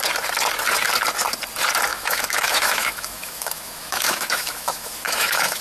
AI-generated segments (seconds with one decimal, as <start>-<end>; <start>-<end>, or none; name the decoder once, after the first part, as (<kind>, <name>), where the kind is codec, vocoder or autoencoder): 1.9-5.6 (autoencoder, DAC-VAE)